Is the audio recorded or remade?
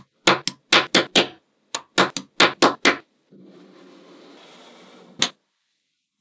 recorded